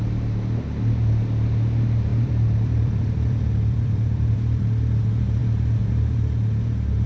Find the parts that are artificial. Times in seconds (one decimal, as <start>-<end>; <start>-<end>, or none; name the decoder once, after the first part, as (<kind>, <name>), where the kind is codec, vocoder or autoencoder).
2.1-4.6 (vocoder, BigVGAN v2)